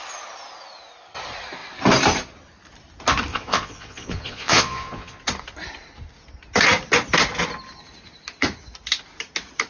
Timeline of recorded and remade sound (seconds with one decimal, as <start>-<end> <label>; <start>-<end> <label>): 0.0-3.3 recorded; 3.3-5.2 remade; 5.2-9.7 recorded